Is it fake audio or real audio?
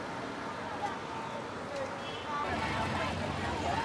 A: real